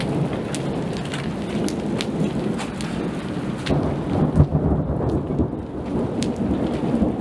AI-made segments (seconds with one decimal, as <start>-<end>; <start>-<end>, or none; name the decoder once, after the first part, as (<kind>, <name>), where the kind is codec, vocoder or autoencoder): none